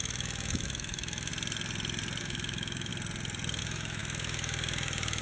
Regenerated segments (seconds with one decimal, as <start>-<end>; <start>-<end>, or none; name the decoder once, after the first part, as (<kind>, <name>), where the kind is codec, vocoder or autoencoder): 0.0-1.3 (autoencoder, DAC-VAE); 2.2-2.9; 3.6-5.2

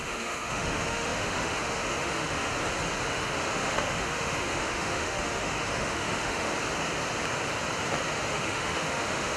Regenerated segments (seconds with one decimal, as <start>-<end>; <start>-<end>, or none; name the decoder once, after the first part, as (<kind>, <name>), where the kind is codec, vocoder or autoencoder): 0.0-2.5 (autoencoder, DAC-VAE); 3.1-6.5; 8.1-9.4